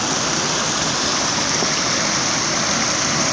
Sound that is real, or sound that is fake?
real